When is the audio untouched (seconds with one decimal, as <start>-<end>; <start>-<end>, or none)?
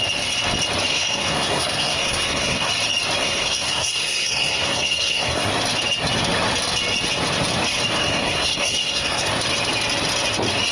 0.0-0.9; 2.7-3.2; 5.5-8.0; 9.3-10.7